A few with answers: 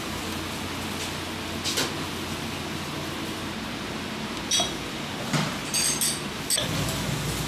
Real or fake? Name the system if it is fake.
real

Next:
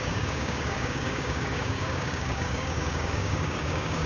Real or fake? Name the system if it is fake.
fake, codec, DAC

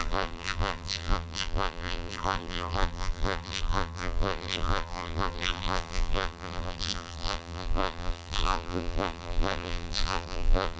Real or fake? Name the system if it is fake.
fake, vocoder, BigVGAN v2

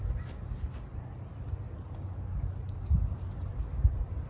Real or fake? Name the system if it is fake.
real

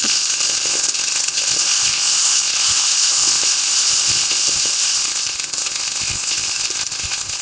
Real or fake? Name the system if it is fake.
fake, codec, ZipCodec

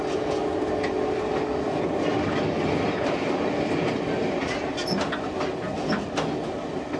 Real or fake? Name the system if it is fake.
real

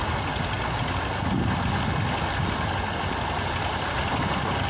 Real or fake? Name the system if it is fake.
real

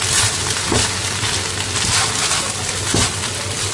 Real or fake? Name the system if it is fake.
real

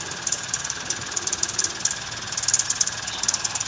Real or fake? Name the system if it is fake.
real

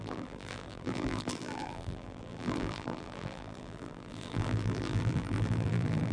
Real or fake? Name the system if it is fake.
fake, vocoder, BigVGAN v2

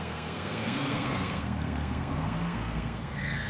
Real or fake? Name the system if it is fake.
fake, codec, SNAC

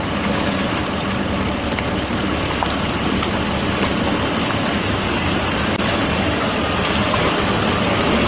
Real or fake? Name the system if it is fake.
real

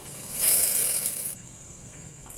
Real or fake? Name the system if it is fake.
fake, codec, SNAC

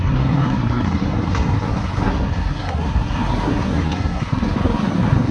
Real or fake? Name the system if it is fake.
fake, codec, SNAC